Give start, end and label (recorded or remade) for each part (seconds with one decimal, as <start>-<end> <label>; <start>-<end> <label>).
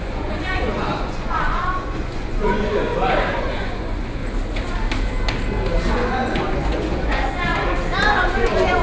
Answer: 0.0-2.9 remade; 2.9-3.4 recorded; 3.4-4.2 remade; 4.2-5.9 recorded; 5.9-7.5 remade; 7.5-8.1 recorded; 8.1-8.8 remade